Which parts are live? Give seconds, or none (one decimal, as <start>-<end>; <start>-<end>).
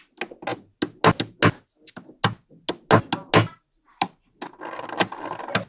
0.0-5.7